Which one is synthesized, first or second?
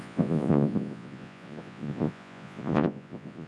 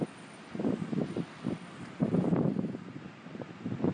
first